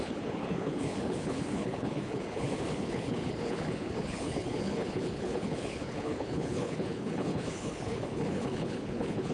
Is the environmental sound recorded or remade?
remade